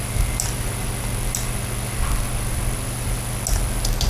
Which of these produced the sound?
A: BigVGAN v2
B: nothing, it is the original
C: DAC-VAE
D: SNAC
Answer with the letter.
B